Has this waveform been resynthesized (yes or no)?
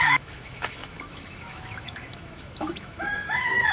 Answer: yes